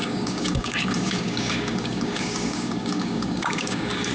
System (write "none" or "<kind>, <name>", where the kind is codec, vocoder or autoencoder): codec, DAC